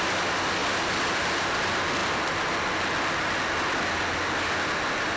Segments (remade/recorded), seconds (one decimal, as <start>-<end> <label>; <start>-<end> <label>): 0.0-5.2 recorded